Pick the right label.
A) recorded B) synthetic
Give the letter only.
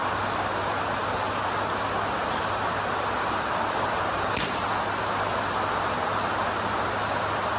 A